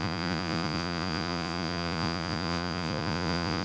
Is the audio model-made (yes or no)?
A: yes